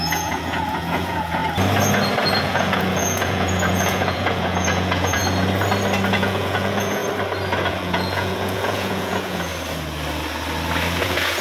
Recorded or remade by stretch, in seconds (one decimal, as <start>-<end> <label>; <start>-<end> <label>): 0.0-1.4 remade; 1.4-2.4 recorded; 2.4-5.2 remade; 5.2-6.1 recorded; 6.1-7.0 remade; 7.0-7.7 recorded; 7.7-9.5 remade; 9.5-11.0 recorded; 11.0-11.4 remade

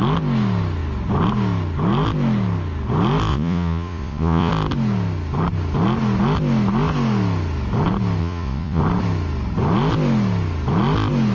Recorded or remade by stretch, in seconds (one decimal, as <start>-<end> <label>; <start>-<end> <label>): 0.0-3.3 recorded; 3.3-4.5 remade; 4.5-8.2 recorded; 8.2-8.8 remade; 8.8-11.3 recorded

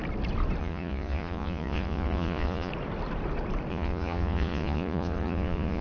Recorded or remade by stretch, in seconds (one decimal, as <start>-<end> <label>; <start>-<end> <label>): 0.0-0.6 recorded; 0.6-2.7 remade; 2.7-3.7 recorded; 3.7-5.8 remade

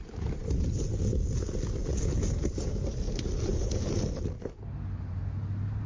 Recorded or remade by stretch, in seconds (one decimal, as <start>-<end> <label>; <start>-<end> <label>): 0.0-1.8 recorded; 1.8-2.4 remade; 2.4-3.5 recorded; 3.5-4.0 remade; 4.0-5.9 recorded

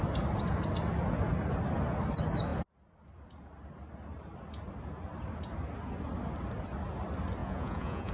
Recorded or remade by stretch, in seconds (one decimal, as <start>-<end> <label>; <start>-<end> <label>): 0.0-7.4 recorded; 7.4-8.1 remade

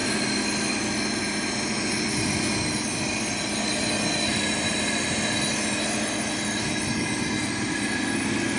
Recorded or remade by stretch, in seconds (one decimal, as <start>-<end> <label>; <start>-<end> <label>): 0.0-8.6 recorded

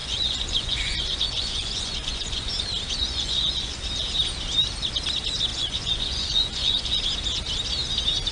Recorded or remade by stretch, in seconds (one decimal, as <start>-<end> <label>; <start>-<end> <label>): 0.0-2.5 remade; 2.5-3.0 recorded; 3.0-3.8 remade; 3.8-5.5 recorded; 5.5-7.0 remade; 7.0-8.3 recorded